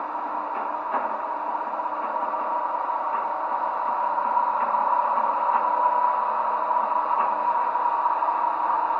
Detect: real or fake real